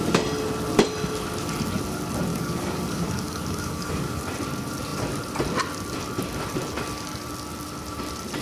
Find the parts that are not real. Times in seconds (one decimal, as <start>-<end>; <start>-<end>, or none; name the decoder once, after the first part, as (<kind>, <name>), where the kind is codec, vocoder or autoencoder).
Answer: 2.3-4.2 (codec, DAC)